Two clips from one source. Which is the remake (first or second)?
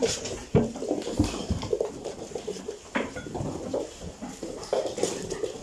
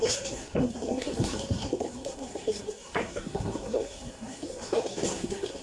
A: second